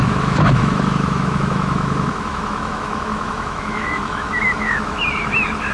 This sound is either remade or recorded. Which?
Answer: remade